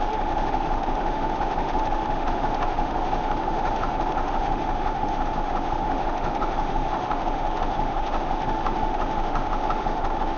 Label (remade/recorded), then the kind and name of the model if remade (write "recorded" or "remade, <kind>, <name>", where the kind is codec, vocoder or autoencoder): remade, autoencoder, DAC-VAE